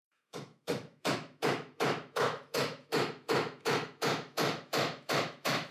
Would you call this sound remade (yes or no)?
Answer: yes